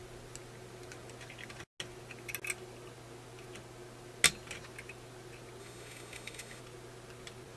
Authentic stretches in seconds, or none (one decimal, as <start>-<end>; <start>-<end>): 0.0-5.6; 6.6-7.6